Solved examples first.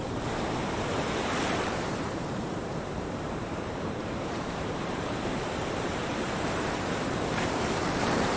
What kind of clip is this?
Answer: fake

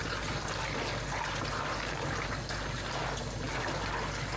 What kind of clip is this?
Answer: real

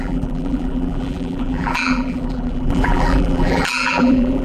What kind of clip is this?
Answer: fake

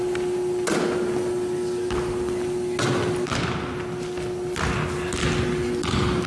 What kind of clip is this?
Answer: real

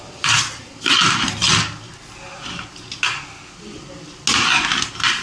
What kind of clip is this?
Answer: real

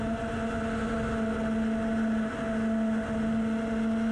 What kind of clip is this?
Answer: real